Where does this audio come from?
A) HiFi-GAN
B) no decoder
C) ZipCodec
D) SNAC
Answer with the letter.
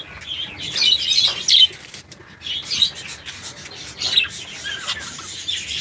B